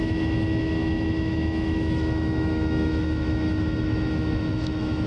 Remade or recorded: remade